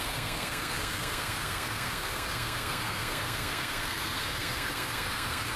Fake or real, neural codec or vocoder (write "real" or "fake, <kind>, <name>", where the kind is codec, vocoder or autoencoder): fake, codec, SNAC